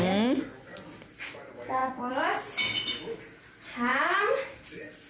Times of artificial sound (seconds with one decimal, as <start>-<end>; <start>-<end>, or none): 1.8-2.4